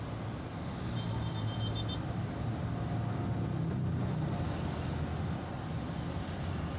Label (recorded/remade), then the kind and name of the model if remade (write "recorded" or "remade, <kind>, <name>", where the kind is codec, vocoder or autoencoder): recorded